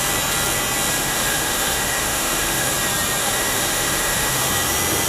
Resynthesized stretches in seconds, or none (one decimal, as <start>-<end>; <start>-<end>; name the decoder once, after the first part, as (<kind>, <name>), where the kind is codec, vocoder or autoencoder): 1.0-2.7 (autoencoder, DAC-VAE); 3.2-4.5